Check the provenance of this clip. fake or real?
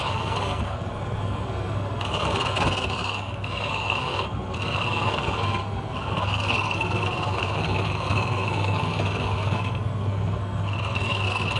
fake